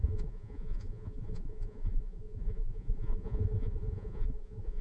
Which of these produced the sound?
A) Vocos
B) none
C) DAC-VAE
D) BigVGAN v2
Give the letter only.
A